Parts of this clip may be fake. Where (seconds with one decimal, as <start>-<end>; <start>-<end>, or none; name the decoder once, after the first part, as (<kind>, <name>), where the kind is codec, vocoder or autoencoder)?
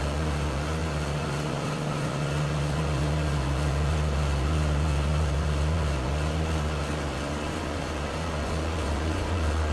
0.0-9.7 (vocoder, Vocos)